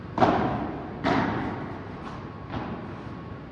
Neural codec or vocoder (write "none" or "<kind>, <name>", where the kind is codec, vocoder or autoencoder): none